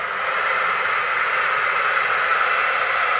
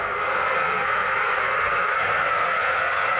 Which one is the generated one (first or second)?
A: second